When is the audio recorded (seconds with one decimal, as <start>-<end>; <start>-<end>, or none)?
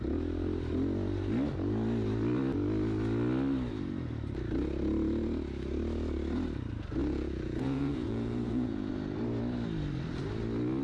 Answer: 0.0-7.0; 8.9-10.8